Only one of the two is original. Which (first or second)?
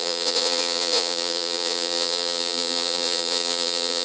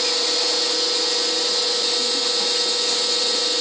second